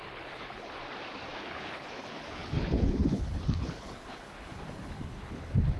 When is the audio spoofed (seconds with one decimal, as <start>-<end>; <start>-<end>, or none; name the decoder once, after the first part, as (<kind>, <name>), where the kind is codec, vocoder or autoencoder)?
0.0-0.8 (codec, HILCodec); 1.4-5.8